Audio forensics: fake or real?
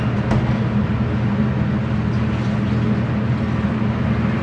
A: real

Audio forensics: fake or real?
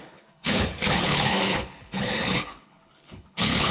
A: fake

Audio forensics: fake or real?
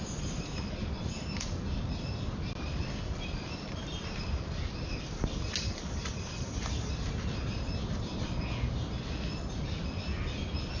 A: real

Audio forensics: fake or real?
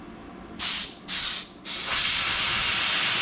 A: real